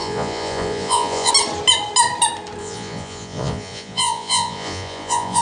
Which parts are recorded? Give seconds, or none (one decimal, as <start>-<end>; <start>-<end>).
1.3-2.6